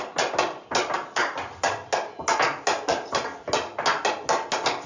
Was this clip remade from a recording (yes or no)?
no